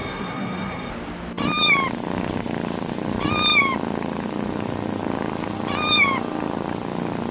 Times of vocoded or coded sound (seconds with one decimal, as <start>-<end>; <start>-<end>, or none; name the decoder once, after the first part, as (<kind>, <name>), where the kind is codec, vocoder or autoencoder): 0.0-0.9 (codec, SNAC)